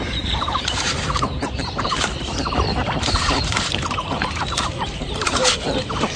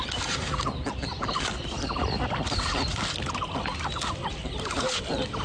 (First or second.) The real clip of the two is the second